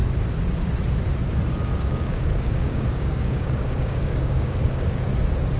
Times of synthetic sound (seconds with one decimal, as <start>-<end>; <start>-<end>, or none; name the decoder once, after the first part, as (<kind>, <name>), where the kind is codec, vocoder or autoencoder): 1.7-5.1 (codec, DAC)